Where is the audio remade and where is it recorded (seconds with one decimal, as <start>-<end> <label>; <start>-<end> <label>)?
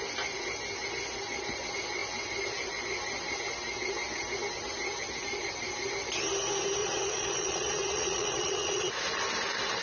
0.0-6.8 recorded; 6.8-8.9 remade; 8.9-9.8 recorded